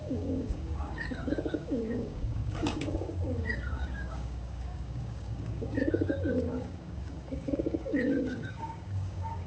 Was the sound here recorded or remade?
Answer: remade